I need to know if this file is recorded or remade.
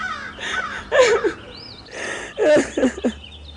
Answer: recorded